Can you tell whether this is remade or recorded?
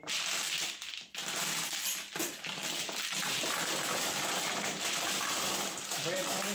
remade